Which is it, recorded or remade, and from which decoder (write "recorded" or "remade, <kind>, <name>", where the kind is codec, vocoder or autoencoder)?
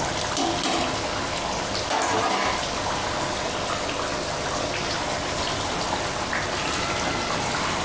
recorded